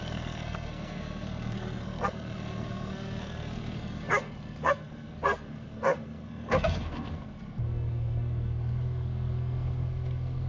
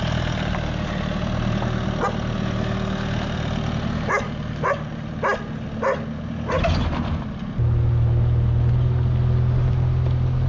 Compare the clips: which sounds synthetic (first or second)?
first